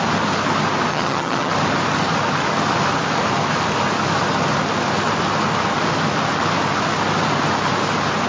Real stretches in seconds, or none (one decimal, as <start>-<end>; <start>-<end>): 0.0-0.9; 1.5-8.3